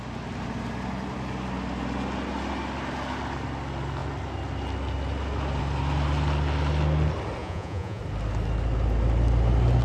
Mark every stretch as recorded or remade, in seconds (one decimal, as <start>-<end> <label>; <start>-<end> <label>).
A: 0.0-7.4 recorded; 7.4-8.0 remade; 8.0-9.8 recorded